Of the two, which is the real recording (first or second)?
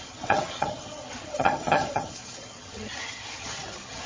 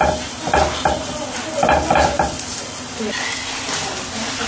second